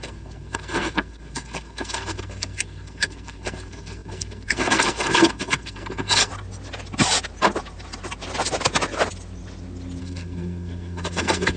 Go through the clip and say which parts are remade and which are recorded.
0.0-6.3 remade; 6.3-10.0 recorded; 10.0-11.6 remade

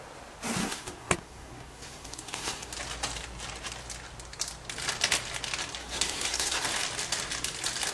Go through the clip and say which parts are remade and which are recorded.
0.0-0.6 recorded; 0.6-2.7 remade; 2.7-5.8 recorded; 5.8-6.6 remade; 6.6-7.9 recorded

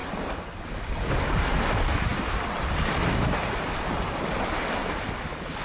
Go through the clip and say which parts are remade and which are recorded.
0.0-5.6 recorded

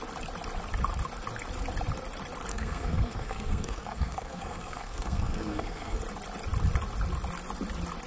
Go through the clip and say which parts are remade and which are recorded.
0.0-2.5 recorded; 2.5-6.0 remade; 6.0-8.1 recorded